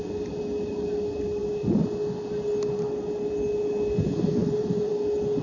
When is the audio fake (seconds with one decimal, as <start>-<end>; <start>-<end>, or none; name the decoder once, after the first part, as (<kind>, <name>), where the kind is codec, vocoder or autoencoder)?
4.4-4.9 (vocoder, BigVGAN v2)